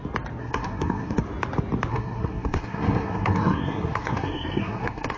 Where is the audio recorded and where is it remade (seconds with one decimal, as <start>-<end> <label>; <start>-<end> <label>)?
0.0-0.4 recorded; 0.4-1.2 remade; 1.2-1.9 recorded; 1.9-5.2 remade